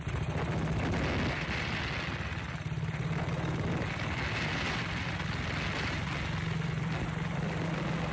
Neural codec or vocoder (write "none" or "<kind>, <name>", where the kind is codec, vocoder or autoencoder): none